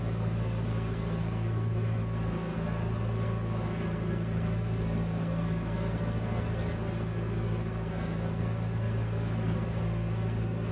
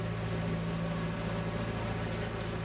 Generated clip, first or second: first